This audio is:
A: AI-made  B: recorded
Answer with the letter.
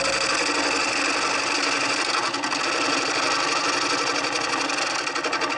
B